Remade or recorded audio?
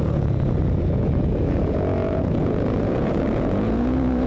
remade